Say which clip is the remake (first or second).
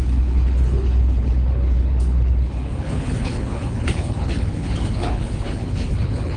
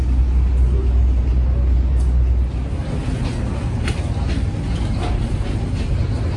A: first